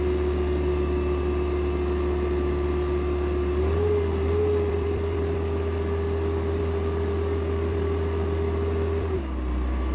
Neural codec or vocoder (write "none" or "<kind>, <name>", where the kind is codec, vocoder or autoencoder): none